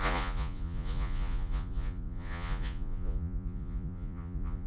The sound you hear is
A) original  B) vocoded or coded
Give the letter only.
B